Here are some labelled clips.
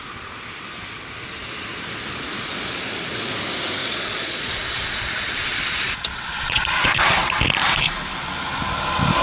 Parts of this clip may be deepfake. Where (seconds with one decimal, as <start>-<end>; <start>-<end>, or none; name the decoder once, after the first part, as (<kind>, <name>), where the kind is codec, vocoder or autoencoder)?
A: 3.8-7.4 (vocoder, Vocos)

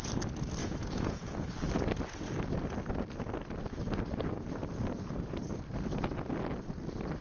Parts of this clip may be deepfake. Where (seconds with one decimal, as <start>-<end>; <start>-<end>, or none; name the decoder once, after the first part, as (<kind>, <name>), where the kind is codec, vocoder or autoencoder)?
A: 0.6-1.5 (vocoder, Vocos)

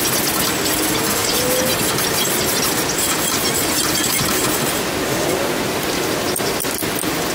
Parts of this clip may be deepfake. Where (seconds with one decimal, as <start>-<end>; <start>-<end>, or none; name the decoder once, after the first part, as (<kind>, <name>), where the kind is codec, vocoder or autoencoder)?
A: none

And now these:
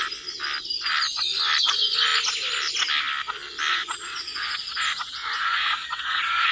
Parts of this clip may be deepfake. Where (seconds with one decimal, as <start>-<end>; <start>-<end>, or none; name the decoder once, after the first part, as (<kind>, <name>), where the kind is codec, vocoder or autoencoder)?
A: 3.7-6.5 (vocoder, Vocos)

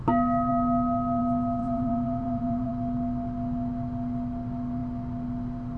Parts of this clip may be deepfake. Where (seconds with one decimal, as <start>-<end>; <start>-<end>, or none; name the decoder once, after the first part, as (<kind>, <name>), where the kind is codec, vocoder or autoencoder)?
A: 1.6-2.7 (vocoder, Vocos)

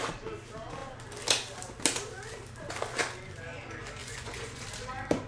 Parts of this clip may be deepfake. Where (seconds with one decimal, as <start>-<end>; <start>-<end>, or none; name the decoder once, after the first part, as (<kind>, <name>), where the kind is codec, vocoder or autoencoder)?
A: 4.0-4.6 (vocoder, Vocos)